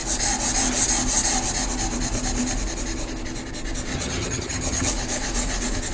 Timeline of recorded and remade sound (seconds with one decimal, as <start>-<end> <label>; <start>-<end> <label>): 0.0-3.9 recorded; 3.9-4.9 remade; 4.9-5.9 recorded